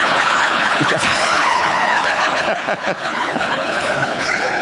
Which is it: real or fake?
fake